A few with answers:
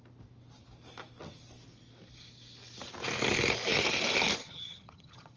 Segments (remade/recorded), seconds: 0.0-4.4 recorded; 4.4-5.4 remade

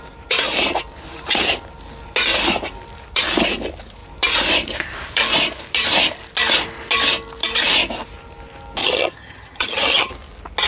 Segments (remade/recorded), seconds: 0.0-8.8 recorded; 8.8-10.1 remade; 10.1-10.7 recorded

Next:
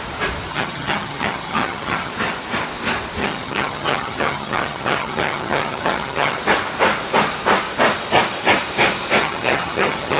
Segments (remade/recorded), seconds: 0.0-0.5 recorded; 0.5-2.1 remade; 2.1-3.2 recorded; 3.2-6.4 remade; 6.4-9.2 recorded; 9.2-10.2 remade

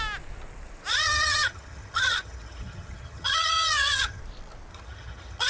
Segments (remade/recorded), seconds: 0.0-0.9 recorded; 0.9-4.2 remade; 4.2-4.7 recorded; 4.7-5.5 remade

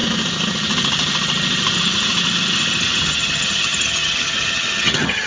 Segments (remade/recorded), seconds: 0.0-3.0 recorded; 3.0-5.3 remade